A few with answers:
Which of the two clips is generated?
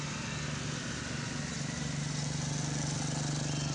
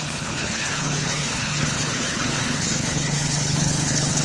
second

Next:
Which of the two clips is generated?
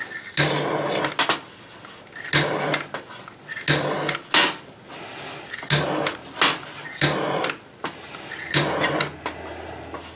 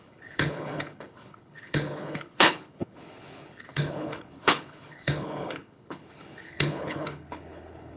second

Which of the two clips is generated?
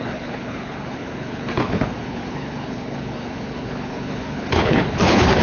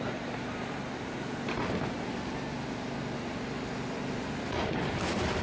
first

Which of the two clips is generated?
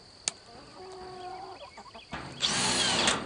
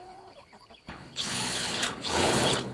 second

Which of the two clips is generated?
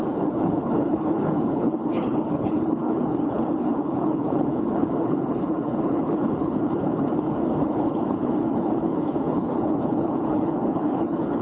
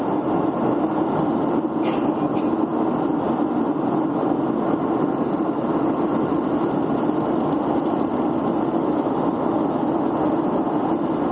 first